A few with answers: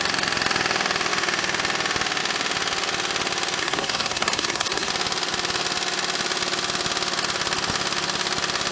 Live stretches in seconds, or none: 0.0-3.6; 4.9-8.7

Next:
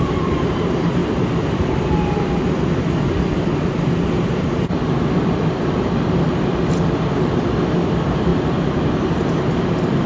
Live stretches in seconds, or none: 8.3-9.0

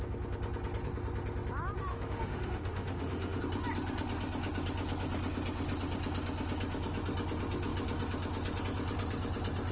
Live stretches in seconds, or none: 0.0-1.9; 3.4-9.7

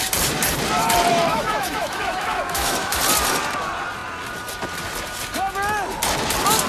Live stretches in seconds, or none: 0.0-1.3; 3.0-6.7

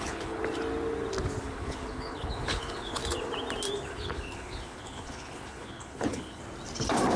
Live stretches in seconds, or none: 0.4-1.4; 3.0-3.9; 6.4-7.2

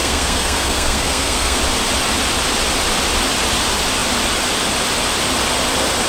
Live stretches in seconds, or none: 1.6-6.1

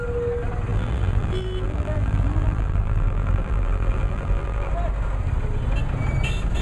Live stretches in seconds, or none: 0.0-0.7; 4.7-6.6